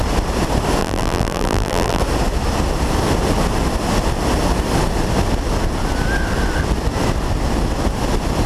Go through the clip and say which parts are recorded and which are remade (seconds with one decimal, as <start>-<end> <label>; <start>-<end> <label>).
0.0-0.8 recorded; 0.8-2.0 remade; 2.0-8.5 recorded